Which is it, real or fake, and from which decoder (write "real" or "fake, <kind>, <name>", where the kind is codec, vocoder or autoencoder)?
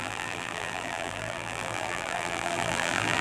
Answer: fake, vocoder, BigVGAN v2